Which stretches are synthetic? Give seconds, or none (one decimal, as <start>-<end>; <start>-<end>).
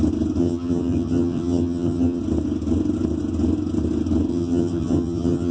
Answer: 0.4-2.2; 4.3-5.5